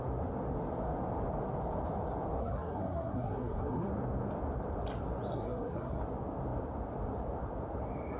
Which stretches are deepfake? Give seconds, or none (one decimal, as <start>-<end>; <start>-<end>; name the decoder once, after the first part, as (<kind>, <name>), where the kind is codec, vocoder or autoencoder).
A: 2.4-3.9 (codec, SNAC); 5.3-6.0